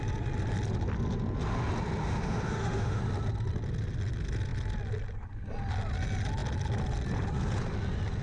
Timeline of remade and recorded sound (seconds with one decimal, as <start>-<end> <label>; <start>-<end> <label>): 0.0-2.0 recorded; 2.0-3.0 remade; 3.0-8.2 recorded

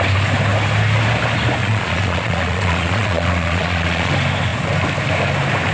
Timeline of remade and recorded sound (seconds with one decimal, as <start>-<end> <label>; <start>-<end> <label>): 0.0-1.6 recorded; 1.6-4.1 remade; 4.1-5.7 recorded

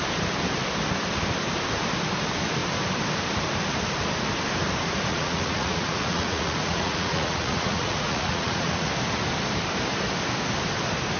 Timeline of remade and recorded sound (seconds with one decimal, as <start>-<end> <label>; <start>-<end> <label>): 0.0-5.1 recorded; 5.1-8.9 remade; 8.9-11.2 recorded

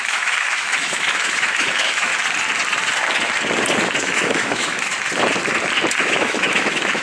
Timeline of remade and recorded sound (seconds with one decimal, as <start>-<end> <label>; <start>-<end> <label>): 0.0-2.1 remade; 2.1-4.0 recorded; 4.0-4.9 remade; 4.9-6.0 recorded; 6.0-7.0 remade

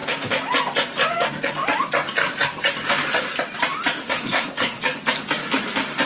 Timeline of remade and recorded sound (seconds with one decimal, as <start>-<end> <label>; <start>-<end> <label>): 0.0-4.0 recorded; 4.0-4.8 remade; 4.8-6.1 recorded

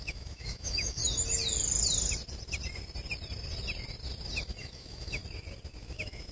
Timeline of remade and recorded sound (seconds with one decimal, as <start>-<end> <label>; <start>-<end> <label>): 0.0-1.0 remade; 1.0-4.6 recorded; 4.6-5.2 remade; 5.2-5.8 recorded; 5.8-6.3 remade

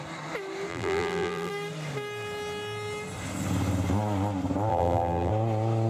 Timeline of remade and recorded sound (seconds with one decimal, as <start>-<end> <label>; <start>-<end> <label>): 0.0-0.7 recorded; 0.7-1.5 remade; 1.5-4.7 recorded; 4.7-5.3 remade; 5.3-5.9 recorded

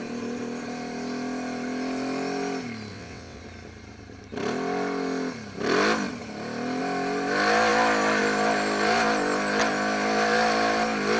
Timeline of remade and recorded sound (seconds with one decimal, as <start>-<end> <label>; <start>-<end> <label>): 0.0-2.9 recorded; 2.9-3.4 remade; 3.4-11.2 recorded